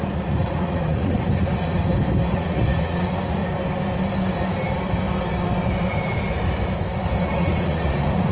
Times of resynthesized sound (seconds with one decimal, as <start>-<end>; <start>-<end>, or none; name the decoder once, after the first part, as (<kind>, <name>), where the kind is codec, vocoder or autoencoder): 0.0-1.8 (vocoder, Vocos); 2.3-3.4; 7.2-8.3